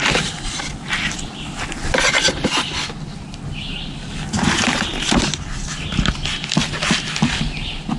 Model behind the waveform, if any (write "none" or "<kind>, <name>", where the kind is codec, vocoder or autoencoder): none